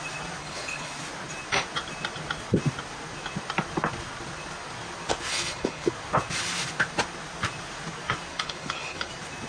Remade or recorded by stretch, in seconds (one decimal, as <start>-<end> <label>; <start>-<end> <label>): 0.0-0.4 recorded; 0.4-0.9 remade; 0.9-5.3 recorded; 5.3-5.9 remade; 5.9-8.3 recorded; 8.3-9.1 remade; 9.1-9.5 recorded